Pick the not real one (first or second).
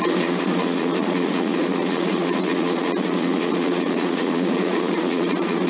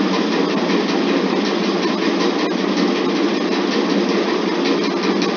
first